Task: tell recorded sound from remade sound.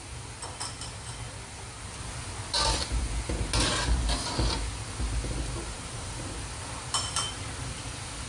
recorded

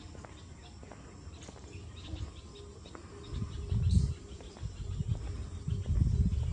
recorded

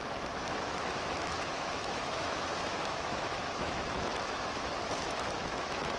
remade